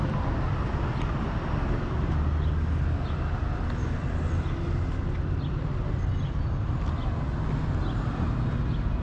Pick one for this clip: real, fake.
real